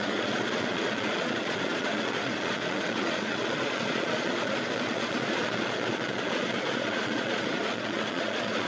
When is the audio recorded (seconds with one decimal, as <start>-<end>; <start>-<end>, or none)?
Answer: none